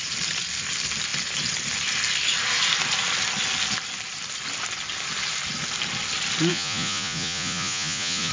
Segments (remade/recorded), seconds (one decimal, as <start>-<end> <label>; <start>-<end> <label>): 0.0-6.5 recorded; 6.5-8.3 remade